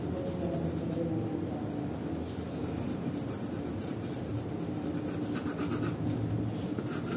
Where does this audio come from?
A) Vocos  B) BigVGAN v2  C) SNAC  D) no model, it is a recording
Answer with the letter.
D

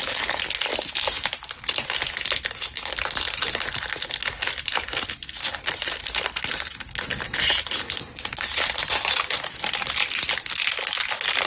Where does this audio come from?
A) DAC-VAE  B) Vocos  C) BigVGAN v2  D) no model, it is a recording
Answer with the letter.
D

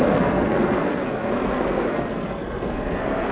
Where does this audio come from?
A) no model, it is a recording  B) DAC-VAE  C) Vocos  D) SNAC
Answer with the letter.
D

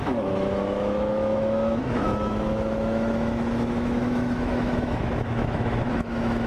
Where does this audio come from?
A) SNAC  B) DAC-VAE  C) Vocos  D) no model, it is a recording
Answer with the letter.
B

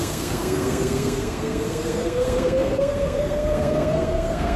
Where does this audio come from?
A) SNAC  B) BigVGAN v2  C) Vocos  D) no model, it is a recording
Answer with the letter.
A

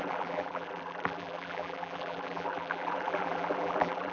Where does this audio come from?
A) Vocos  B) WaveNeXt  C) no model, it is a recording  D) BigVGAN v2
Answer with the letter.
D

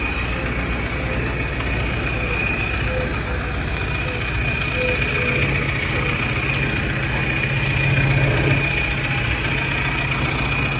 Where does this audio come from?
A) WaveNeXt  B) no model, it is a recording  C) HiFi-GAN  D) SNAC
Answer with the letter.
B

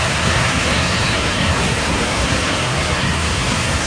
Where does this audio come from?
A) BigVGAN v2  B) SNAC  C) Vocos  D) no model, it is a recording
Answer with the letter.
B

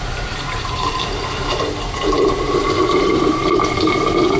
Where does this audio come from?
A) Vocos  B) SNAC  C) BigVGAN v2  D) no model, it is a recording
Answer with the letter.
C